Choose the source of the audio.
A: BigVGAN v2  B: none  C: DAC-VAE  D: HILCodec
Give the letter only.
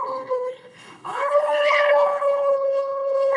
D